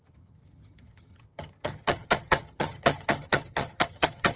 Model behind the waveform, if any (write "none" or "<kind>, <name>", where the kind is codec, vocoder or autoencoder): vocoder, HiFi-GAN